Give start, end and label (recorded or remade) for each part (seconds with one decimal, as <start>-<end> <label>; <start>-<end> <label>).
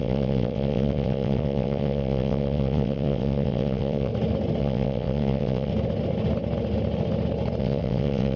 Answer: 0.0-4.1 remade; 4.1-4.6 recorded; 4.6-5.7 remade; 5.7-7.6 recorded; 7.6-8.4 remade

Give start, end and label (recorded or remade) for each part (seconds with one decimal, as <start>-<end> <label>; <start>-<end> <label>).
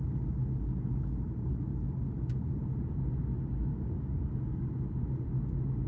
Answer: 0.0-3.7 recorded; 3.7-4.7 remade; 4.7-5.9 recorded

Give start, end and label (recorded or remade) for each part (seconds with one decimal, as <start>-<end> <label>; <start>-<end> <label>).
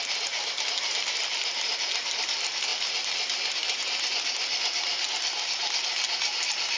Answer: 0.0-6.8 recorded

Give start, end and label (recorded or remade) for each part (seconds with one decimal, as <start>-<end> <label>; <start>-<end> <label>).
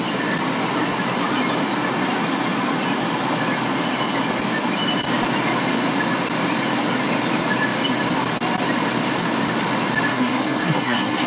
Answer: 0.0-10.1 recorded; 10.1-11.3 remade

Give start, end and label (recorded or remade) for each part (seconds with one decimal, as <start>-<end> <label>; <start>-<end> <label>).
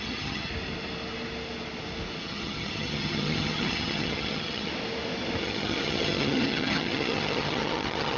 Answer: 0.0-0.5 remade; 0.5-2.2 recorded; 2.2-4.7 remade; 4.7-5.4 recorded; 5.4-8.2 remade